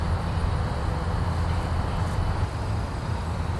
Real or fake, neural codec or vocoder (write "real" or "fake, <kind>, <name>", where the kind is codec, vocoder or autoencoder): real